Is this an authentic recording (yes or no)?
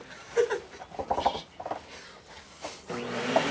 yes